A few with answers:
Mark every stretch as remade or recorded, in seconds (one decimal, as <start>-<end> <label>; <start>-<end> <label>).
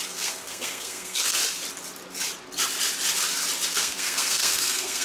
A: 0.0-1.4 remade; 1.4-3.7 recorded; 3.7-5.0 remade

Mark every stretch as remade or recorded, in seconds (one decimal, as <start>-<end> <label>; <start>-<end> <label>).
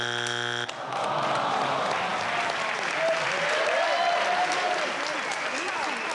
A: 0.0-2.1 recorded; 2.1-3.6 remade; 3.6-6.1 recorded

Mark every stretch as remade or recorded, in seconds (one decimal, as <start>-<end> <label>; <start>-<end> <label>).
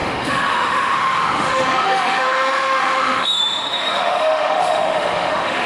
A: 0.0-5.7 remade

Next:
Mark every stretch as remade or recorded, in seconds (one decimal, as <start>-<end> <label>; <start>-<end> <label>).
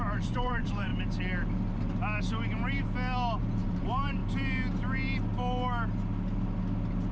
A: 0.0-0.9 remade; 0.9-3.4 recorded; 3.4-4.2 remade; 4.2-7.1 recorded